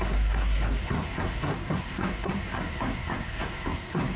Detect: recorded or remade remade